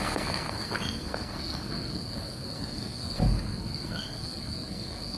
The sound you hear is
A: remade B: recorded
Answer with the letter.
A